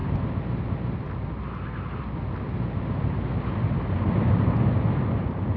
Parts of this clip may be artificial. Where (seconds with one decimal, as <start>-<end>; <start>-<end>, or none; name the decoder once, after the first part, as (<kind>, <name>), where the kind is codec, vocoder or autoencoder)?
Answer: none